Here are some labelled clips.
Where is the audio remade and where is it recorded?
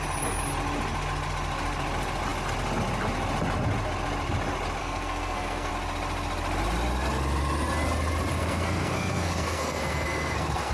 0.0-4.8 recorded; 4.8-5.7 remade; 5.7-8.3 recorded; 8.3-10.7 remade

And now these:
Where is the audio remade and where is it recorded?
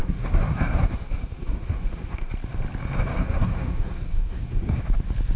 0.0-2.3 remade; 2.3-3.1 recorded; 3.1-4.8 remade; 4.8-5.4 recorded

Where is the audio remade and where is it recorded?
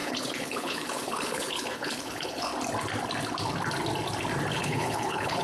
0.0-2.5 remade; 2.5-4.5 recorded; 4.5-5.4 remade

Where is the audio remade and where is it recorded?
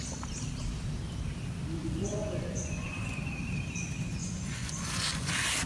0.0-1.8 recorded; 1.8-3.2 remade; 3.2-4.2 recorded; 4.2-5.3 remade; 5.3-5.7 recorded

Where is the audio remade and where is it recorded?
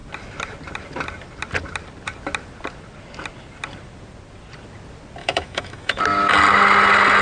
0.0-5.2 recorded; 5.2-6.0 remade; 6.0-7.2 recorded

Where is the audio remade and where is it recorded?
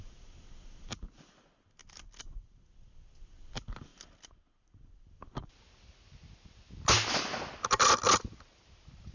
0.0-9.1 recorded